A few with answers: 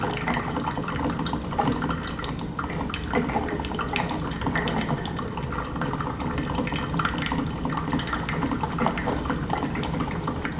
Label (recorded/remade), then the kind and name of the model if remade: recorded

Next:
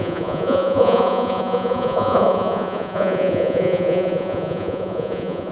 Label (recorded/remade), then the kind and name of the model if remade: remade, vocoder, Vocos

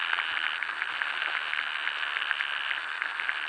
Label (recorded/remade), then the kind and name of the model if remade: recorded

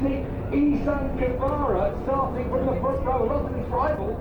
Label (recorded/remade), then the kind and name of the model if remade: recorded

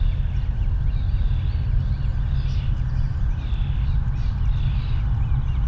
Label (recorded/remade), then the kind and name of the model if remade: recorded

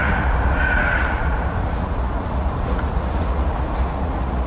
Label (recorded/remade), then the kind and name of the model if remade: remade, vocoder, Vocos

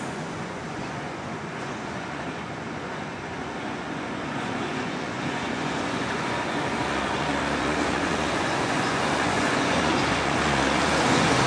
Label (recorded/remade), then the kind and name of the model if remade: remade, vocoder, Vocos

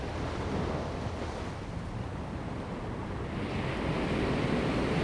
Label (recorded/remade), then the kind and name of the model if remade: recorded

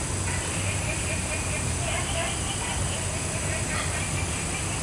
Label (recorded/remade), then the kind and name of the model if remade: recorded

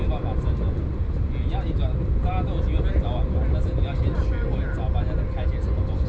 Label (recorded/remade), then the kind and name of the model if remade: recorded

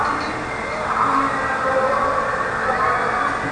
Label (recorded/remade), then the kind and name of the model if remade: recorded